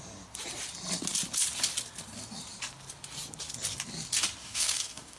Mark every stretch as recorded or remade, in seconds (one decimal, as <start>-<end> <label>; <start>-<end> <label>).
0.0-4.4 recorded; 4.4-5.2 remade